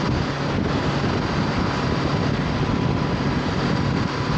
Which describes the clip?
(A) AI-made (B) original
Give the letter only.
B